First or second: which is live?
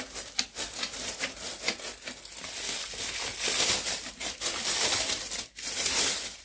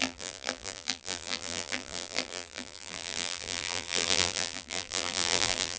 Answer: first